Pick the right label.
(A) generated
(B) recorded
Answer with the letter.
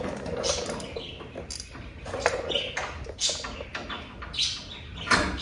B